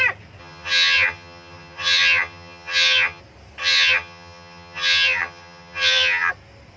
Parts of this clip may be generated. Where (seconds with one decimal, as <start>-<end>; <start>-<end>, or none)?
0.4-3.2; 3.6-6.3